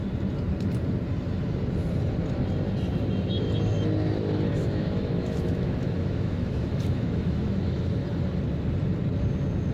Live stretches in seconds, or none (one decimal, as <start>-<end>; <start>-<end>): 0.0-4.6; 8.0-9.7